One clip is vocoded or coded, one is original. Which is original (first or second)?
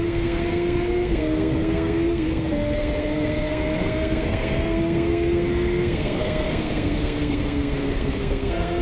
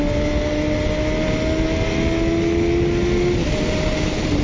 second